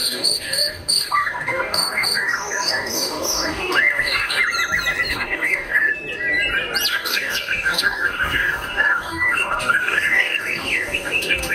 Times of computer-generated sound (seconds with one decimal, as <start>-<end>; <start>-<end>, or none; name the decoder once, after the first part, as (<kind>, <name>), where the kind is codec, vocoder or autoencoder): 0.0-4.4 (codec, DAC); 5.1-5.9; 6.9-11.5